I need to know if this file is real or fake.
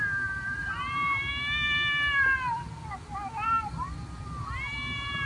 real